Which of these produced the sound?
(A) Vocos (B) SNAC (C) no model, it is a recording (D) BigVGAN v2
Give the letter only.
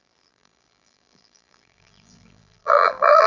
D